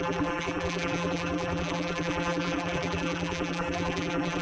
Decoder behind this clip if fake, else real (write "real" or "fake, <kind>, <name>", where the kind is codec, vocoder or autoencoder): fake, vocoder, BigVGAN v2